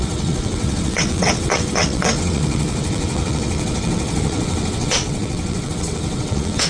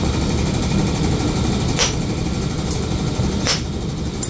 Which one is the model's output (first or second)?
first